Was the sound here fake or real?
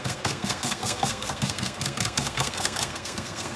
fake